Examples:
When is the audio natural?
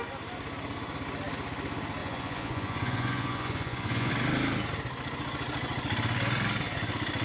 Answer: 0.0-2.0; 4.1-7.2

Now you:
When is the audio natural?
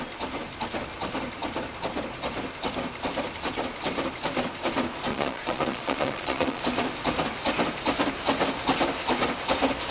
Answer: 0.0-5.1; 6.6-9.9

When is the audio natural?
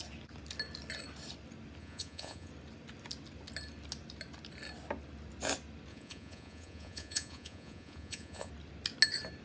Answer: 0.0-1.8; 2.5-5.9; 8.5-9.4